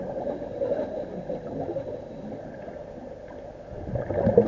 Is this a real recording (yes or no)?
yes